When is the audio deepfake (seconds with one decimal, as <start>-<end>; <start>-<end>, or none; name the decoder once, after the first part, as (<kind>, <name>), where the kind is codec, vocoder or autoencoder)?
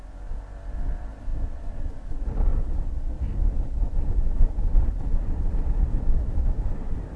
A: none